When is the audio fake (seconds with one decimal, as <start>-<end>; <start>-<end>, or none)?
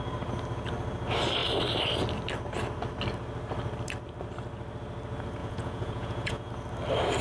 5.4-6.5